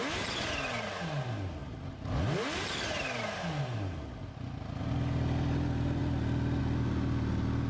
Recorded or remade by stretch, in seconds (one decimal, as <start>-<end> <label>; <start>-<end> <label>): 0.0-7.7 recorded